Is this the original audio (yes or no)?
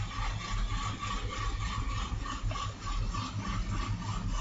yes